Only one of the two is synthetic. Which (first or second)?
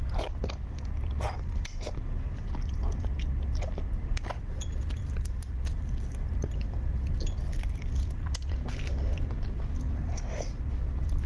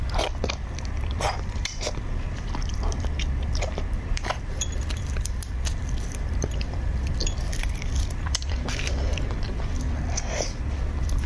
second